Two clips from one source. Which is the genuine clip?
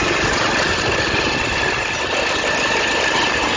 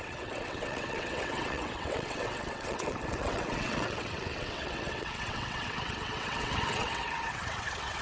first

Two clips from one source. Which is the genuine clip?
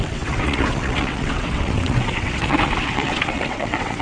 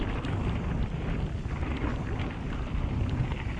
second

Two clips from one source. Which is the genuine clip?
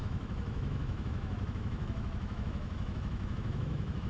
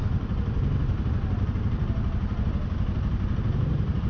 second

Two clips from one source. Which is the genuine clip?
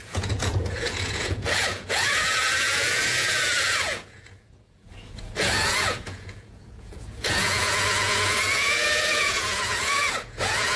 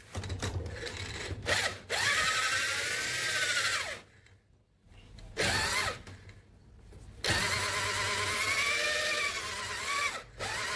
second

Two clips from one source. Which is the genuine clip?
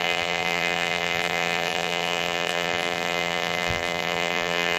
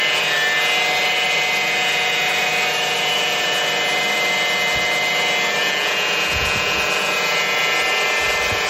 second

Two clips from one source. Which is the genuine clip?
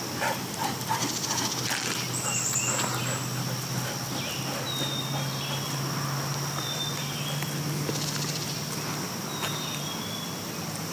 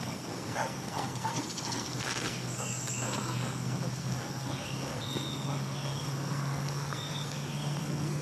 first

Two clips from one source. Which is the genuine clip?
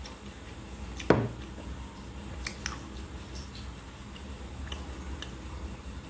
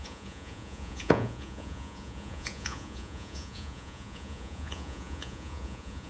first